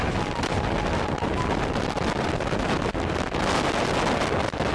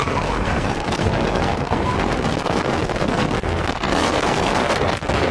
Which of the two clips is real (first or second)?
first